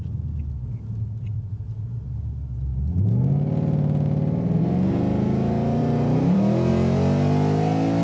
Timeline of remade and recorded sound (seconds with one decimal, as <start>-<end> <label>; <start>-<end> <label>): 0.0-5.8 recorded; 5.8-6.7 remade; 6.7-8.0 recorded